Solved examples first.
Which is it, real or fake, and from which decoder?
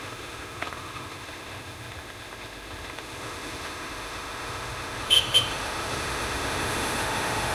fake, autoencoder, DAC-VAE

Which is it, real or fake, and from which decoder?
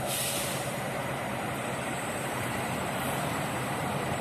fake, vocoder, BigVGAN v2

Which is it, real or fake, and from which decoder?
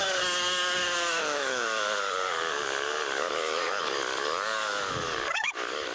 fake, codec, DAC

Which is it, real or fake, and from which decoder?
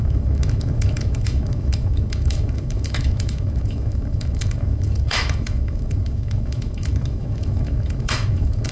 fake, autoencoder, DAC-VAE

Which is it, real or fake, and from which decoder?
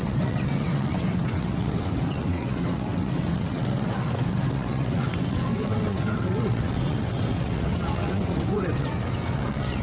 fake, vocoder, WaveNeXt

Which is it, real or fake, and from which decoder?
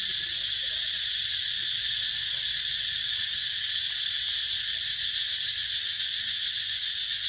real